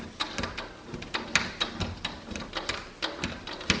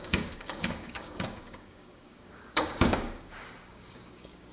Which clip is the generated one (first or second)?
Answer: second